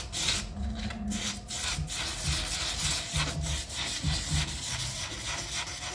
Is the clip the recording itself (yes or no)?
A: yes